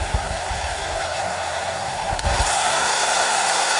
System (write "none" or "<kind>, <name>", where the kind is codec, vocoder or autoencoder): codec, SNAC